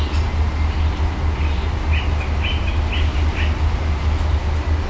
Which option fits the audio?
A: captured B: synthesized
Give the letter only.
A